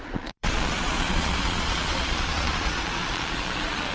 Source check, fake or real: fake